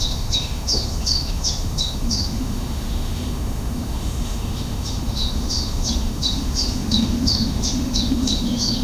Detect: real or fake fake